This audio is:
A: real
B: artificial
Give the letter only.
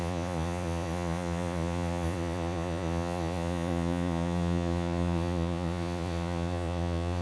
B